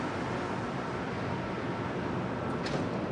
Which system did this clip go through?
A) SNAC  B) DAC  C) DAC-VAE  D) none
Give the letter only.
D